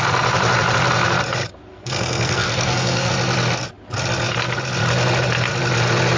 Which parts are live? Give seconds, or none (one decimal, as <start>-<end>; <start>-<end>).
0.0-1.7; 3.1-6.2